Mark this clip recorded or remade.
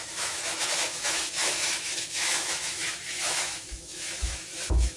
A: remade